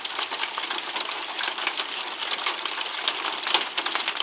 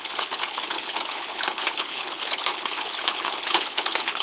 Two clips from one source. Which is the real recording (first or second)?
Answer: first